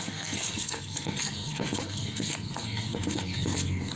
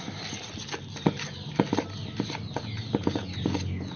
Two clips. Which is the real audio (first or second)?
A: second